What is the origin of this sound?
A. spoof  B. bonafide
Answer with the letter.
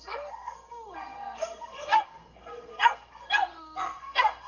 A